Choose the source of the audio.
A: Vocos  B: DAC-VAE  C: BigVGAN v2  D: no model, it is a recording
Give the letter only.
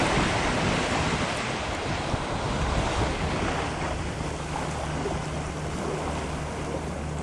D